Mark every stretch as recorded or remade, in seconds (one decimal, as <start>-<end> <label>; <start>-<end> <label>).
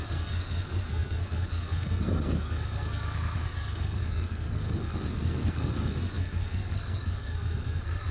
0.0-8.1 remade